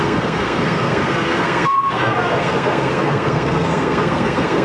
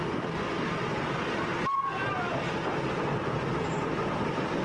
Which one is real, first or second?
second